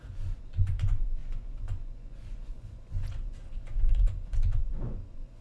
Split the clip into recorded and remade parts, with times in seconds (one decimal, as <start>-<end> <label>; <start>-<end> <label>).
0.0-5.4 remade